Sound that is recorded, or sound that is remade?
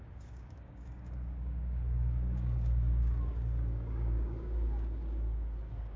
remade